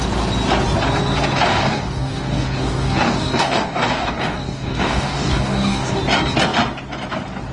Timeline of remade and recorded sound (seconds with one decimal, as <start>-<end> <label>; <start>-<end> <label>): 0.0-1.5 recorded; 1.5-6.0 remade; 6.0-7.5 recorded